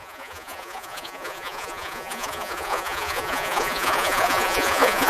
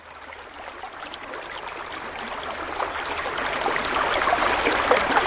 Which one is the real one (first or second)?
second